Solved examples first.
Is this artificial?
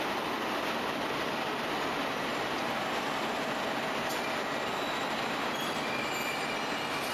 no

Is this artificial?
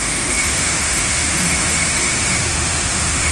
yes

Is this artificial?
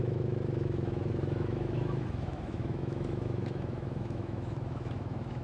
yes